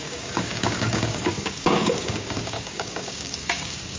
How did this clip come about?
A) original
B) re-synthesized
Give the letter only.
B